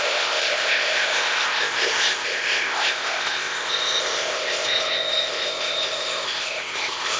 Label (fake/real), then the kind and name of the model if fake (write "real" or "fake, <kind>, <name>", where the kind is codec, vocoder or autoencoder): fake, codec, ZipCodec